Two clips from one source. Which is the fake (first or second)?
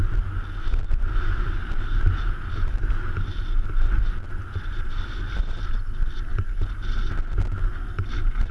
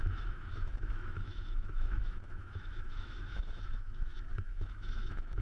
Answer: second